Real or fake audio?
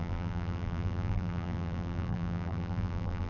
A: fake